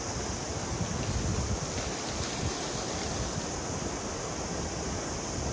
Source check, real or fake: real